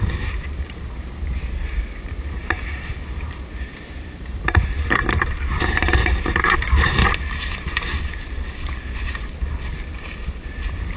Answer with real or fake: fake